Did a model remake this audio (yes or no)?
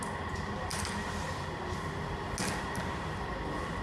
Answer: no